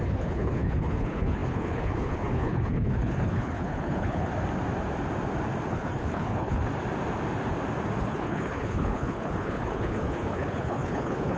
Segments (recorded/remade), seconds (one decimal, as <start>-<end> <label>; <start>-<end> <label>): 0.0-4.3 remade; 4.3-5.7 recorded; 5.7-6.6 remade; 6.6-8.0 recorded; 8.0-11.4 remade